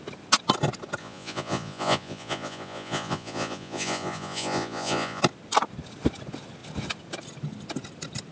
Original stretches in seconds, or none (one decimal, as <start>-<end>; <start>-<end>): 0.0-1.0; 5.2-8.3